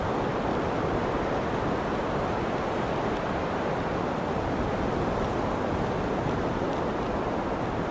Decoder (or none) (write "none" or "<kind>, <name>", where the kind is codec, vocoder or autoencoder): none